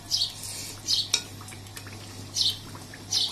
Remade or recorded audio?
recorded